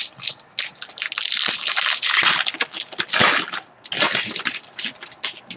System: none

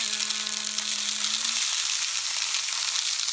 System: none